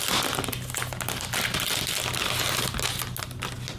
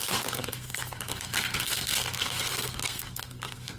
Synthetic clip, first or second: second